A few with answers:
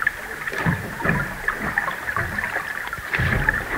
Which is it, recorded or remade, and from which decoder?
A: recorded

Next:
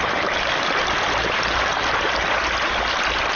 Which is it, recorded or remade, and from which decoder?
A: recorded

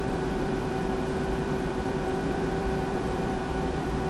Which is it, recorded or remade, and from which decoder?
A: remade, vocoder, BigVGAN v2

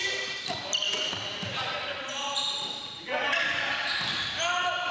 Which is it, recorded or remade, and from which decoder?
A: remade, vocoder, BigVGAN v2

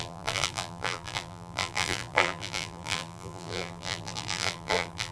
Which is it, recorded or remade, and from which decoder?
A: remade, vocoder, BigVGAN v2